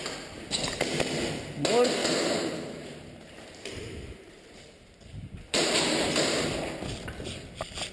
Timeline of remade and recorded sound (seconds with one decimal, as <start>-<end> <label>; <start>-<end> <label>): 0.0-2.0 recorded; 2.0-6.4 remade; 6.4-7.9 recorded